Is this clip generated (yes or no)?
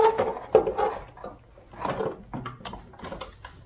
no